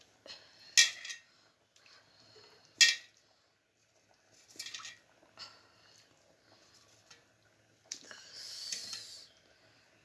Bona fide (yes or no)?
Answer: yes